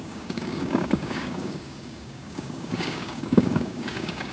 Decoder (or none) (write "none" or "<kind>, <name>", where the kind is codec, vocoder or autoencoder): codec, DAC